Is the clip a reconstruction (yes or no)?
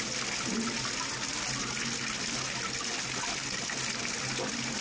no